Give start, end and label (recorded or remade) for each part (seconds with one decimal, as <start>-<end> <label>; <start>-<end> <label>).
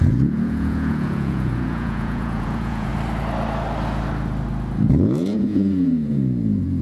0.0-2.9 remade; 2.9-4.9 recorded; 4.9-6.8 remade